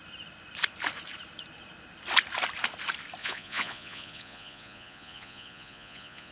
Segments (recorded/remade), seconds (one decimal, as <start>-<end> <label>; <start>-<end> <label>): 0.0-3.2 recorded; 3.2-6.3 remade